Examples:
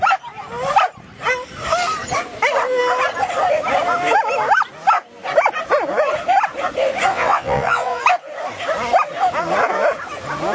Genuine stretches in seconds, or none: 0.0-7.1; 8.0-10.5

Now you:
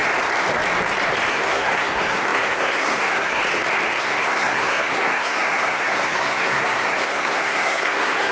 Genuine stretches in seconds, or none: 0.0-1.3; 3.4-4.0

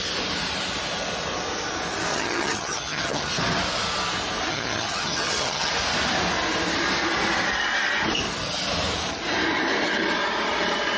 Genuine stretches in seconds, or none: 0.0-2.1; 3.3-4.5; 5.7-11.0

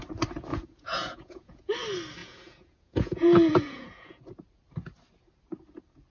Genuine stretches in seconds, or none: 0.0-0.5; 1.7-2.2; 4.2-6.1

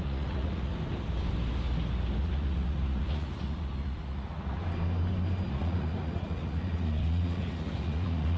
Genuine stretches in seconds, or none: 0.7-2.2; 4.6-5.5

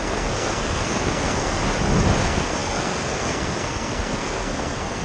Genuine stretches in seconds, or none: 1.6-2.2

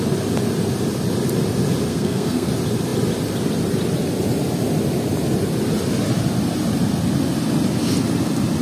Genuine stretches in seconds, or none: 0.0-1.9; 2.5-8.6